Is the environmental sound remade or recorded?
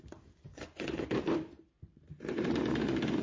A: remade